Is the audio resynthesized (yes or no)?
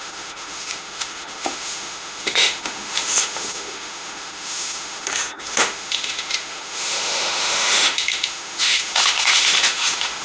yes